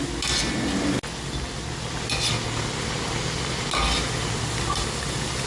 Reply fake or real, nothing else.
real